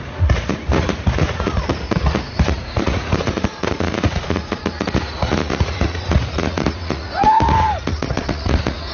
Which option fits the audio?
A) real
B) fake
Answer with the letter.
B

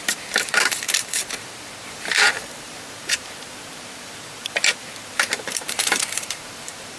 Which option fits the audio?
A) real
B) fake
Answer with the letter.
B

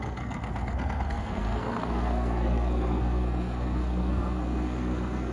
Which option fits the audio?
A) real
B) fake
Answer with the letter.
B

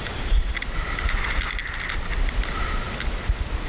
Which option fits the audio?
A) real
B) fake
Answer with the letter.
A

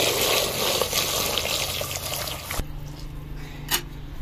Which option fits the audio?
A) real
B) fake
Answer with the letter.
A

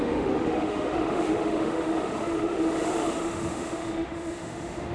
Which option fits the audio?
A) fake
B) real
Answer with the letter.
A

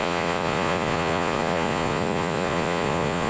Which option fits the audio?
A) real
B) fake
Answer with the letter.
B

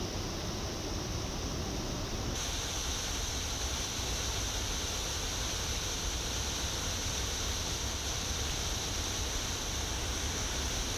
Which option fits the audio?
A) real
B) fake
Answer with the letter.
A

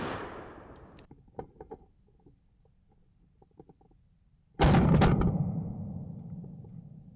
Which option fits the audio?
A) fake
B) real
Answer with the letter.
B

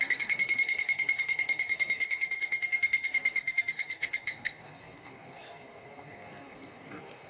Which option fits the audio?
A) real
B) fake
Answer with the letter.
B